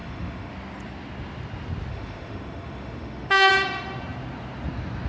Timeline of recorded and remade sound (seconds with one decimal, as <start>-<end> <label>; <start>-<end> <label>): 0.0-0.5 remade; 0.5-1.9 recorded; 1.9-3.5 remade; 3.5-5.1 recorded